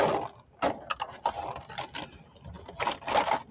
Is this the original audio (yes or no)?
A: yes